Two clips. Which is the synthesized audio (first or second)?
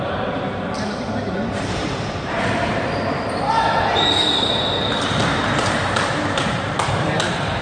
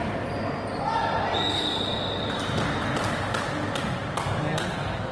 first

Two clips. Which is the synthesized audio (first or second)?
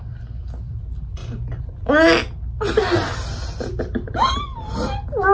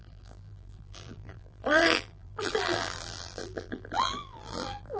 second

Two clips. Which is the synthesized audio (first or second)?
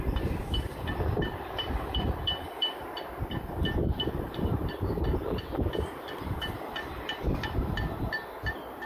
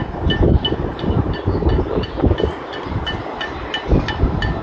first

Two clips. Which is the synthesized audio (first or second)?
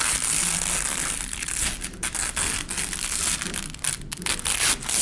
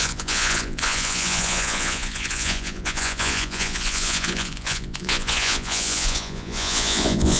second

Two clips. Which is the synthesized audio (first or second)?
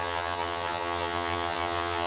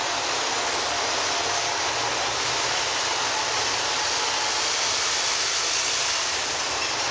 first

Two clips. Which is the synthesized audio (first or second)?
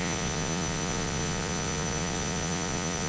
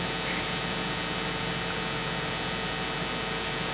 first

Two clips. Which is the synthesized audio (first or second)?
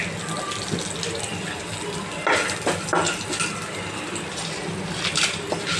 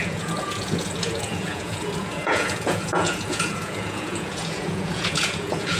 second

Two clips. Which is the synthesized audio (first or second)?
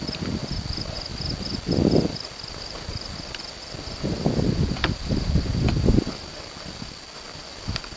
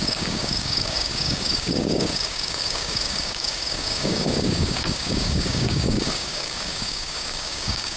second